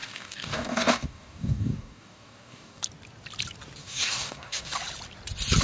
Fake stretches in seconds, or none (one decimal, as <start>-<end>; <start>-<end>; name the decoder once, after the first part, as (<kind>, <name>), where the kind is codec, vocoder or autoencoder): 0.0-2.8 (codec, DAC); 3.8-4.7